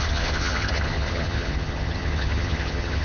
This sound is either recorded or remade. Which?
remade